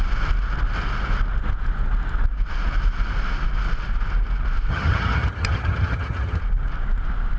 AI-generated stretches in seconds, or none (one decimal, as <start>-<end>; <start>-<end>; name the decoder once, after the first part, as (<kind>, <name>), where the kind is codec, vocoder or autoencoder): 4.7-6.4 (vocoder, HiFi-GAN)